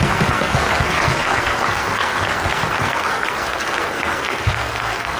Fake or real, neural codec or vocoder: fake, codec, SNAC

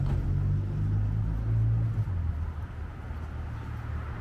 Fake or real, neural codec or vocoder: real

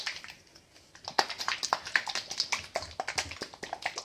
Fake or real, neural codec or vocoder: real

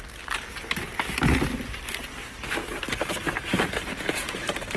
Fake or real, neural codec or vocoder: real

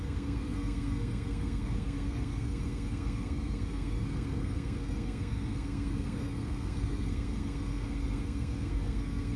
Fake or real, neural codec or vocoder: fake, codec, SNAC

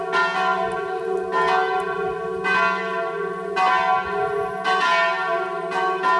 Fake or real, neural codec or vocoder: real